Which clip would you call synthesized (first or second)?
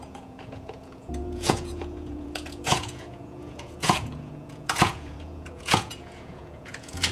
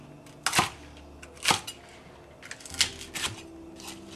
first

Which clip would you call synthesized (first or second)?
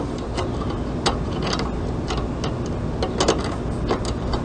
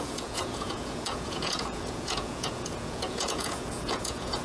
second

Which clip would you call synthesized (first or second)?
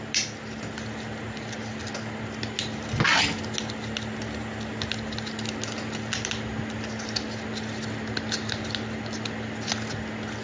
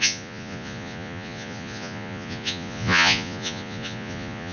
second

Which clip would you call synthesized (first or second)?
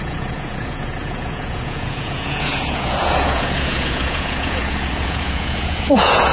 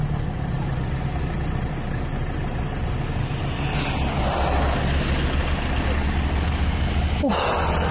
first